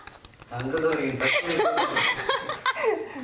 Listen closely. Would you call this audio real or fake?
real